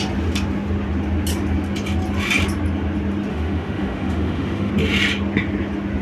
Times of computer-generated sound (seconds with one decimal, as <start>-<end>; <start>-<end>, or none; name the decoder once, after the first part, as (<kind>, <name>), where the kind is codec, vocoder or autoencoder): 3.3-4.7 (autoencoder, DAC-VAE)

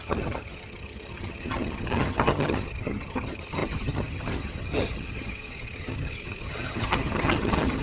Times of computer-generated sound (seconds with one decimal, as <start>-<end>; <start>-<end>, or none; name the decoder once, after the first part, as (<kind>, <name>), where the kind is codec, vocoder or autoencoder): 0.0-7.8 (vocoder, HiFi-GAN)

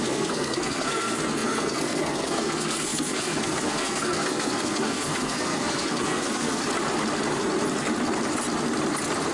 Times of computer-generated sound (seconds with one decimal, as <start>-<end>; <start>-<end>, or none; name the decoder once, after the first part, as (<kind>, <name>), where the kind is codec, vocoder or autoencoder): 0.0-6.6 (codec, SNAC)

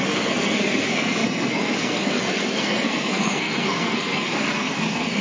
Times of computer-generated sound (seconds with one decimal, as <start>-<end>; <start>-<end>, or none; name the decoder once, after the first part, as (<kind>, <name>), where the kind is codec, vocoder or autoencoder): 0.0-5.2 (codec, SNAC)

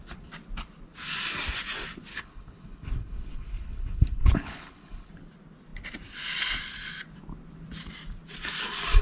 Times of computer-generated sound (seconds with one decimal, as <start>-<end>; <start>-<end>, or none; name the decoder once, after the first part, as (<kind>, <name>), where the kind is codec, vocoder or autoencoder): 2.1-5.1 (codec, HILCodec)

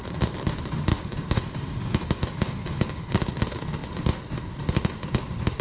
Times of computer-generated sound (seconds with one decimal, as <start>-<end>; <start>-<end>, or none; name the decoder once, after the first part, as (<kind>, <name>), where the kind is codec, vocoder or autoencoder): 0.9-3.3 (codec, DAC)